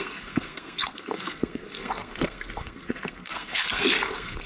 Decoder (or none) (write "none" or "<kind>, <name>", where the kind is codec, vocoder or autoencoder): codec, SNAC